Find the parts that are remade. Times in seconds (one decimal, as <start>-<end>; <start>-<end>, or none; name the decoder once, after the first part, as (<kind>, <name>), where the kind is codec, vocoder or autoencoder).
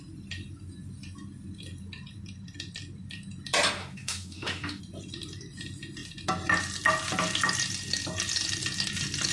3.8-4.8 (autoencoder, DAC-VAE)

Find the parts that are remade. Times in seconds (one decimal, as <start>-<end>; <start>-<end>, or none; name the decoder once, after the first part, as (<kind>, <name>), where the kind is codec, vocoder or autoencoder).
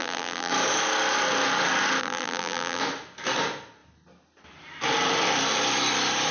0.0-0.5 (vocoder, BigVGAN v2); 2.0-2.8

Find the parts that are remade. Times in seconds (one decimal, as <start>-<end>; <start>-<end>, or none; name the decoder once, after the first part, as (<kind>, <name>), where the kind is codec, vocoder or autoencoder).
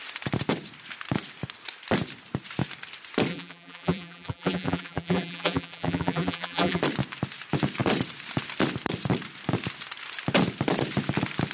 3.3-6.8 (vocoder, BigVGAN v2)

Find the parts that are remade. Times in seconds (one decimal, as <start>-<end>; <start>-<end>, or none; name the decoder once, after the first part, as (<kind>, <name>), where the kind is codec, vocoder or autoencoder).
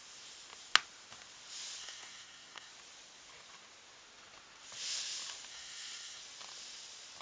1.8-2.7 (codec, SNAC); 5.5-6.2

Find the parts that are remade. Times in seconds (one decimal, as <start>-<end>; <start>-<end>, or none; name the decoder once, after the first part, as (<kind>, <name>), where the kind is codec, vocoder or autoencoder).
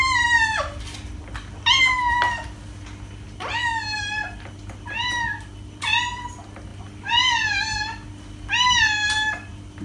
none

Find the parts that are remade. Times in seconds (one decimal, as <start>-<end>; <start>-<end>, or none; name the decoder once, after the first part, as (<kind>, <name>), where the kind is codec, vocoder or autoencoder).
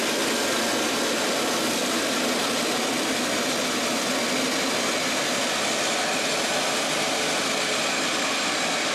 none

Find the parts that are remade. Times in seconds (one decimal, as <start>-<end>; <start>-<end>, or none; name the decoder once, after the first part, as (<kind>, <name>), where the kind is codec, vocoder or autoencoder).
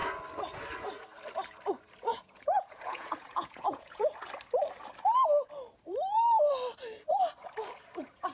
2.1-4.0 (vocoder, Vocos)